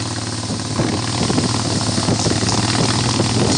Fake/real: real